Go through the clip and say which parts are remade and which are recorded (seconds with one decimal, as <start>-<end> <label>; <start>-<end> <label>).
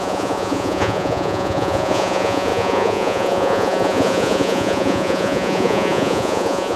0.0-6.8 remade